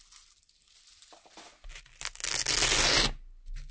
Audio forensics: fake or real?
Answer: real